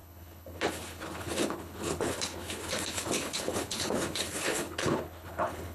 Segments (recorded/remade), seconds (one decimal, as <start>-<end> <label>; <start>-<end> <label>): 0.0-5.7 remade